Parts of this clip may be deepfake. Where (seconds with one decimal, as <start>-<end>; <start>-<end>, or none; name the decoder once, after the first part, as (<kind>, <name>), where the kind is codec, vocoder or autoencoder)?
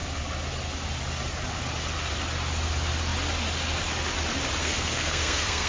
4.6-5.7 (codec, SNAC)